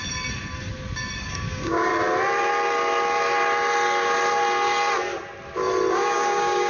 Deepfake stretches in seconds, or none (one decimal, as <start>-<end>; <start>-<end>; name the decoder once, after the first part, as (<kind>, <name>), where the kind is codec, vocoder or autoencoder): 1.2-1.9 (codec, DAC); 5.9-6.7